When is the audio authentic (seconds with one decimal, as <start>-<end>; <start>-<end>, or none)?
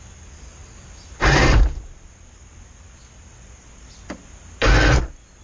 0.0-5.4